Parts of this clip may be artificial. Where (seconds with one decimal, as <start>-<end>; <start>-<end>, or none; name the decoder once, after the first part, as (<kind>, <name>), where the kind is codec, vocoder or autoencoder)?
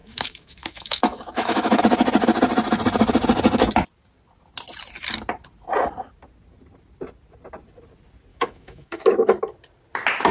0.0-1.8 (autoencoder, DAC-VAE); 8.3-9.1